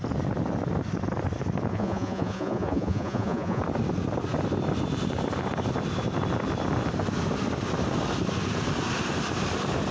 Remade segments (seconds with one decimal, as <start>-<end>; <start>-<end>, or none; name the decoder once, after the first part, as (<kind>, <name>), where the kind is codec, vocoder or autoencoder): 1.7-3.6 (vocoder, Vocos)